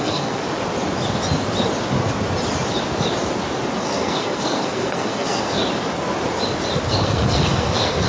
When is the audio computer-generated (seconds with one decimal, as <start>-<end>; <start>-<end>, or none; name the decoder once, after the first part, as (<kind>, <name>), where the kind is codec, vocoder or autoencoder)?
0.0-0.4 (codec, SNAC); 3.8-5.6; 6.9-8.1

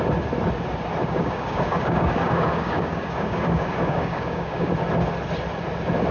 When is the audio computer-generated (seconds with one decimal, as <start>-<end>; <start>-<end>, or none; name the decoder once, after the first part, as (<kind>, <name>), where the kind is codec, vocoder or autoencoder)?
1.0-4.7 (codec, DAC)

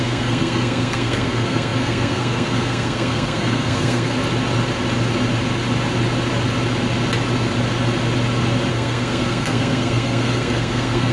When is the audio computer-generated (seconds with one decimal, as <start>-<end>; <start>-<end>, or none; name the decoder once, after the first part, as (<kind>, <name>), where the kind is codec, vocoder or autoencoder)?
0.0-4.2 (codec, SNAC); 8.7-11.1

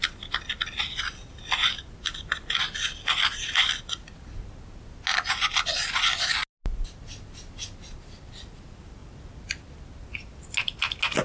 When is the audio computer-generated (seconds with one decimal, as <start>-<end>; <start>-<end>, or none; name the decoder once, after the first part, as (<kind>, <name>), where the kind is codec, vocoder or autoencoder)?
none

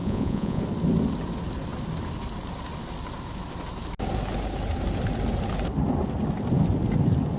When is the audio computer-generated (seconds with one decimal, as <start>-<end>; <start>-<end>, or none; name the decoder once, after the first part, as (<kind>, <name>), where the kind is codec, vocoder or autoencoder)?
0.0-0.6 (vocoder, Vocos)

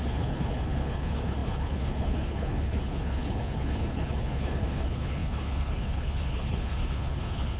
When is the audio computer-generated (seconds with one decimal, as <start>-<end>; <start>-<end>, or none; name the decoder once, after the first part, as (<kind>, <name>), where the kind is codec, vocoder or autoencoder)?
0.0-7.6 (codec, HILCodec)